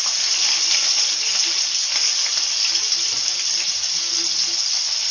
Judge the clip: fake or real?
real